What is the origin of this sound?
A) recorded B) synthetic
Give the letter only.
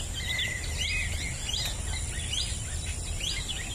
A